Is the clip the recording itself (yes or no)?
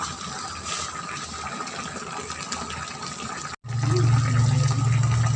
yes